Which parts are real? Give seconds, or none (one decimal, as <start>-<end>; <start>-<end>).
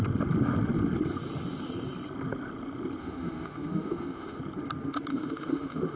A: 0.0-3.0; 4.4-5.1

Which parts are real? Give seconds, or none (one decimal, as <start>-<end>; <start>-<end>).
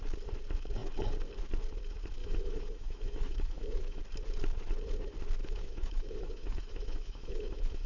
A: 0.0-2.2; 4.0-5.4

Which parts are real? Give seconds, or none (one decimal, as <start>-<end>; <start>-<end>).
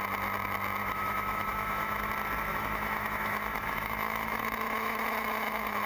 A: 0.0-0.8; 2.1-2.5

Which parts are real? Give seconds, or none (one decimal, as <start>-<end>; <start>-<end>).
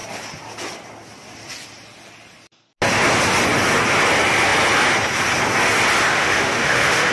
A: 0.0-6.1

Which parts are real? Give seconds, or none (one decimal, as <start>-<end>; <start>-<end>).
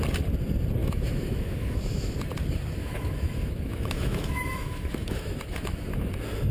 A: 0.0-0.8; 2.1-2.8; 6.1-6.5